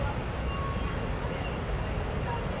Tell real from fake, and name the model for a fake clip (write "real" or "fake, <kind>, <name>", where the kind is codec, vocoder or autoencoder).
real